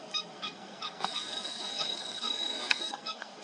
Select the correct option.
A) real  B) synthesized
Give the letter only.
B